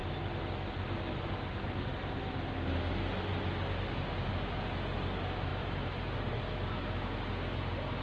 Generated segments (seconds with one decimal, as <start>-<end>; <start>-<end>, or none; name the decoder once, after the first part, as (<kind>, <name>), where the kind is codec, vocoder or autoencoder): 5.5-6.4 (vocoder, BigVGAN v2)